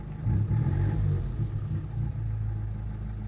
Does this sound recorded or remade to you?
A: recorded